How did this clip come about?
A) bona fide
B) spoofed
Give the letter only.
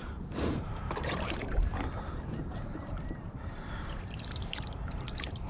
B